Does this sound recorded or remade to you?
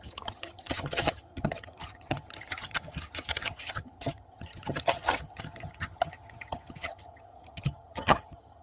remade